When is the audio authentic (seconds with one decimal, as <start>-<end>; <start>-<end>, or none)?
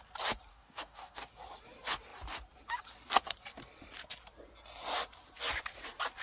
0.0-0.5; 1.3-6.2